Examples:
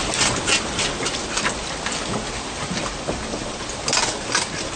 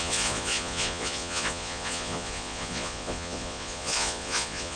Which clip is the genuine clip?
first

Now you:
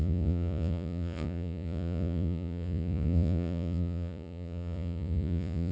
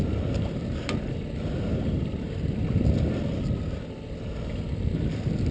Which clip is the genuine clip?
second